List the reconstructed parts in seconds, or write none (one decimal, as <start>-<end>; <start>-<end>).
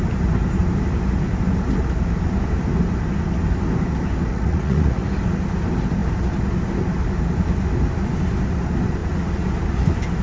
4.3-5.1